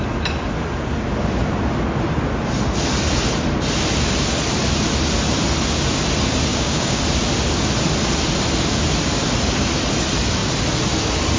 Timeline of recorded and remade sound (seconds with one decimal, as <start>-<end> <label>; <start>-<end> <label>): 0.0-6.5 recorded; 6.5-7.0 remade; 7.0-11.4 recorded

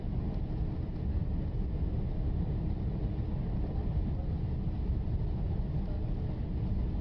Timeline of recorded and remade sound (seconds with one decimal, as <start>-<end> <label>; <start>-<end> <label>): 0.0-7.0 recorded

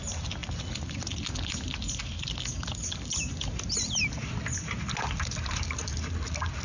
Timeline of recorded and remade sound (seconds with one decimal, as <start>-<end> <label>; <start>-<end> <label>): 0.0-6.6 recorded

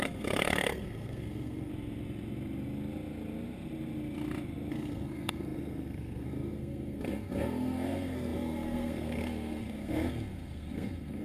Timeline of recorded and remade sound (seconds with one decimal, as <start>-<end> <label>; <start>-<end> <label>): 0.0-1.7 remade; 1.7-4.7 recorded; 4.7-11.2 remade